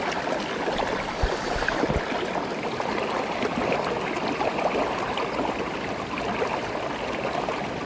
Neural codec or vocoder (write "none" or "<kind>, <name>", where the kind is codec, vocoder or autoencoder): none